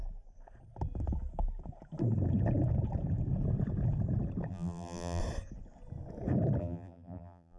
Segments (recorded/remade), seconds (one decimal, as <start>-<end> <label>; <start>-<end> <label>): 0.0-4.5 recorded; 4.5-5.2 remade; 5.2-6.6 recorded; 6.6-7.6 remade

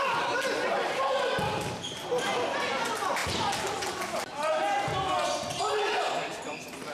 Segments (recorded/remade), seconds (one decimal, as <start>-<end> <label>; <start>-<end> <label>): 0.0-6.9 recorded

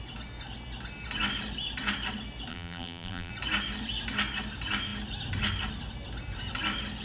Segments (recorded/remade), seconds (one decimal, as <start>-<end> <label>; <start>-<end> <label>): 0.0-2.5 recorded; 2.5-3.3 remade; 3.3-7.0 recorded

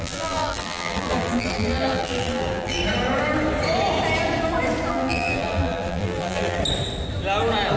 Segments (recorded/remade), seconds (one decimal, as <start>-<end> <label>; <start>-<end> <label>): 0.0-2.8 remade; 2.8-4.9 recorded; 4.9-6.6 remade; 6.6-7.8 recorded

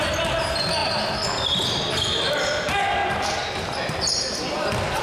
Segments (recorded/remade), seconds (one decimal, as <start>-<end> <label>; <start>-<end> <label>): 0.0-5.0 recorded

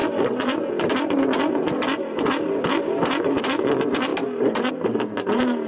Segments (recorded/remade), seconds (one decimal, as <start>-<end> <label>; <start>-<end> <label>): 0.0-5.7 recorded